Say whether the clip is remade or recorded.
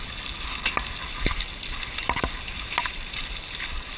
recorded